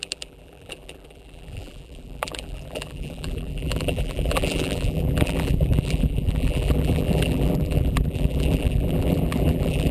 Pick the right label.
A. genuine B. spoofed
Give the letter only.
B